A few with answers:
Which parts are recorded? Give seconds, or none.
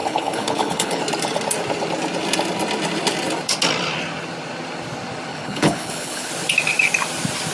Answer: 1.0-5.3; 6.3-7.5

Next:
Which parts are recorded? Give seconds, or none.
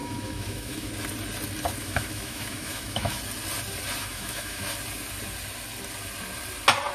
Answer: 0.9-1.8; 3.2-4.0; 4.6-6.9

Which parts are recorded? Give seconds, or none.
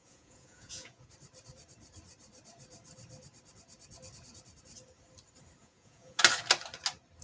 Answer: 1.1-5.6; 6.2-7.2